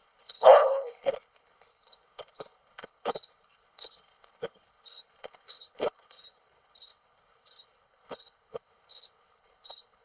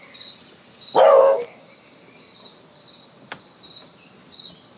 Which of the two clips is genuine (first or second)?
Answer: second